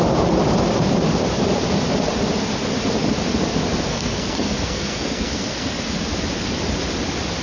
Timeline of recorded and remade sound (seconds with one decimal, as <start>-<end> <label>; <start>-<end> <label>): 0.0-3.9 recorded; 3.9-5.8 remade; 5.8-7.4 recorded